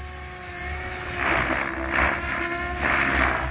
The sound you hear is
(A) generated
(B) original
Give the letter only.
B